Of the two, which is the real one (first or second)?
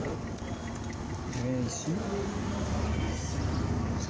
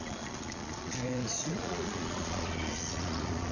first